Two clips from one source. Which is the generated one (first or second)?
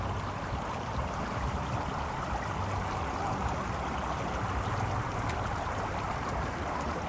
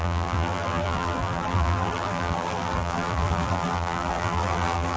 second